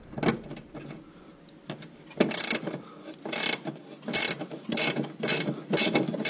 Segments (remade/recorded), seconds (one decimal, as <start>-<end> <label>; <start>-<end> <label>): 0.0-6.3 recorded